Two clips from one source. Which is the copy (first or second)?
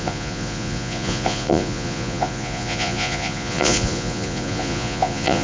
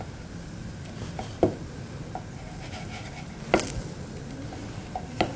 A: first